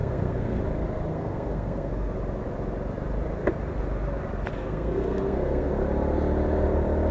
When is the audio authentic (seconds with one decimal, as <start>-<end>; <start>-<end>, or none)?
0.6-1.1; 2.1-4.5; 5.7-7.1